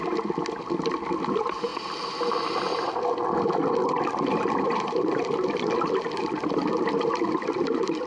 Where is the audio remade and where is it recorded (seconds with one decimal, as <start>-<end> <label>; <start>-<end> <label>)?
0.0-8.1 recorded

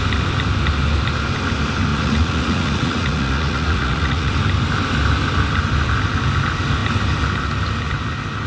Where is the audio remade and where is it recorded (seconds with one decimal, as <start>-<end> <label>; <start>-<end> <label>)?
0.0-1.9 recorded; 1.9-4.3 remade; 4.3-8.5 recorded

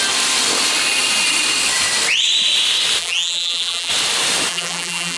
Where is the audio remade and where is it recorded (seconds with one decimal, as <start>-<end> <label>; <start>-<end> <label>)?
0.0-3.0 recorded; 3.0-3.9 remade; 3.9-4.5 recorded; 4.5-5.2 remade

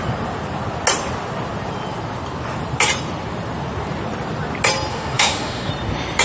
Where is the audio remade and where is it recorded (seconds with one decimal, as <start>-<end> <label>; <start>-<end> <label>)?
0.0-4.9 recorded; 4.9-5.7 remade; 5.7-6.2 recorded

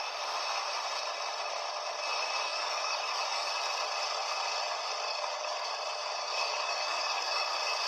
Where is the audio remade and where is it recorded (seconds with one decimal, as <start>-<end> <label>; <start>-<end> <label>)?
0.0-2.5 recorded; 2.5-3.5 remade; 3.5-5.1 recorded; 5.1-5.7 remade; 5.7-6.2 recorded; 6.2-7.5 remade; 7.5-7.9 recorded

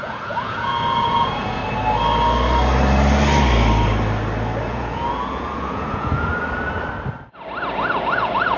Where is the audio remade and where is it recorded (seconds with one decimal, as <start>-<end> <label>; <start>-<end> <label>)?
0.0-1.6 remade; 1.6-4.6 recorded; 4.6-6.3 remade; 6.3-7.7 recorded; 7.7-8.6 remade

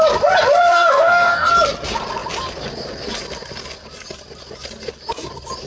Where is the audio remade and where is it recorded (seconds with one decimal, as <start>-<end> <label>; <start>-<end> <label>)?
0.0-0.7 recorded; 0.7-1.5 remade; 1.5-5.7 recorded

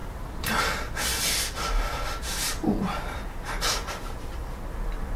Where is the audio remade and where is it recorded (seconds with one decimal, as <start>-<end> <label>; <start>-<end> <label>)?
0.0-5.2 recorded